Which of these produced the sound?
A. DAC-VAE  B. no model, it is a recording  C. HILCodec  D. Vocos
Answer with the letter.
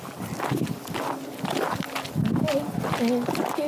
B